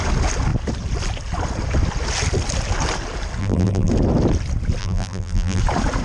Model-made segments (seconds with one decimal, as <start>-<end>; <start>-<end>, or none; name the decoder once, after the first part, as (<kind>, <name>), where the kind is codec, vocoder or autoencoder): 3.4-3.9 (vocoder, BigVGAN v2); 4.8-5.6

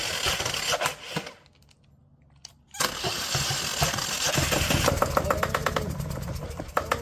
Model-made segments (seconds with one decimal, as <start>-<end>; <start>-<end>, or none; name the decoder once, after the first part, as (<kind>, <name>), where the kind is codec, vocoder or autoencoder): 5.6-7.0 (vocoder, BigVGAN v2)

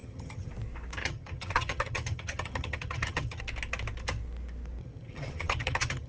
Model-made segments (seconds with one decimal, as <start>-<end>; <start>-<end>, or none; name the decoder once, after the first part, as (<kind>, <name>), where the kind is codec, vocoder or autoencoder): 0.0-0.5 (vocoder, HiFi-GAN); 1.0-3.4; 4.8-6.1

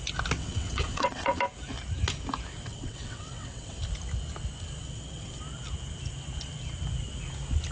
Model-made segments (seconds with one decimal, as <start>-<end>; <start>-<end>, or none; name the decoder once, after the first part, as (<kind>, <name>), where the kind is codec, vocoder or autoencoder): 0.4-1.4 (vocoder, WaveNeXt); 2.7-3.8; 4.8-5.4

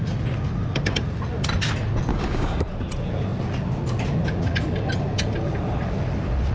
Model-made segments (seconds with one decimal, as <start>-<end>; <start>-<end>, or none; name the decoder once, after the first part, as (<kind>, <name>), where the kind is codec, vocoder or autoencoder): 2.1-2.6 (codec, DAC)

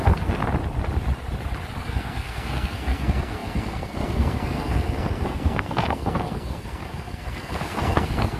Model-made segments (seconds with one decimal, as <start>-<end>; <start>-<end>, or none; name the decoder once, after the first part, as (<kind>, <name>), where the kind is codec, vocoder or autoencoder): 0.0-0.4 (codec, SNAC); 1.8-8.4